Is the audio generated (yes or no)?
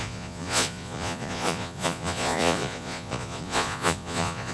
yes